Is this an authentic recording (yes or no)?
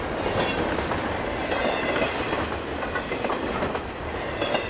yes